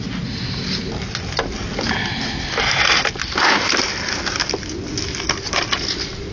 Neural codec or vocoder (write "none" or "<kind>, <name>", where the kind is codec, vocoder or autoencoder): none